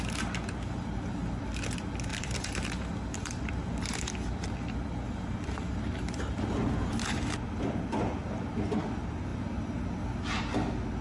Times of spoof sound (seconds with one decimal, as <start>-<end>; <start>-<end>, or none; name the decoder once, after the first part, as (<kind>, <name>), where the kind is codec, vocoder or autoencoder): 2.1-2.9 (vocoder, BigVGAN v2)